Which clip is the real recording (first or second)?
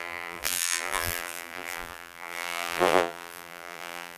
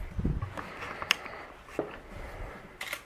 second